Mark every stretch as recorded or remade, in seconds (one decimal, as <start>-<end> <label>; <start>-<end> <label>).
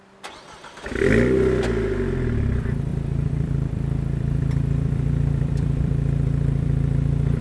0.0-2.9 recorded; 2.9-7.4 remade